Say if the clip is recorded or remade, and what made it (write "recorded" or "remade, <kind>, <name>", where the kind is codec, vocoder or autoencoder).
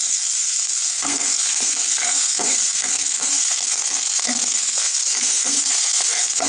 remade, codec, SNAC